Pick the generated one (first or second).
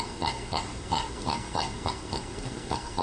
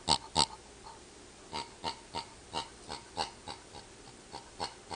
first